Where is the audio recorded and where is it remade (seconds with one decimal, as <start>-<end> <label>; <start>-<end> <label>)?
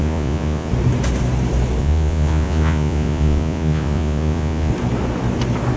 0.0-0.7 remade; 0.7-1.8 recorded; 1.8-4.7 remade; 4.7-5.8 recorded